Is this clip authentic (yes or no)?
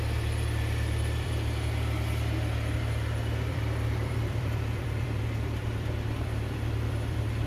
no